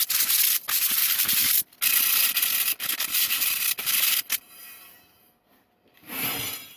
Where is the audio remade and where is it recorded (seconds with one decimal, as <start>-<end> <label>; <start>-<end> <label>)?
0.0-1.0 recorded; 1.0-1.6 remade; 1.6-6.8 recorded